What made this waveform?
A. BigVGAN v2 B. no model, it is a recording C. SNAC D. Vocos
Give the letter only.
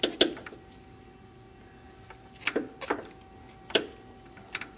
B